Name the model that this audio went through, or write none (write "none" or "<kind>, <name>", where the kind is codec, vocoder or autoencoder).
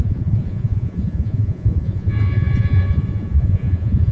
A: vocoder, Vocos